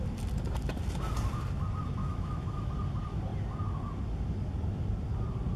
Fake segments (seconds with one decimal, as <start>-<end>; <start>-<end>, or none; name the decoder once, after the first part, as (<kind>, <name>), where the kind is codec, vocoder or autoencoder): 2.0-2.7 (autoencoder, DAC-VAE)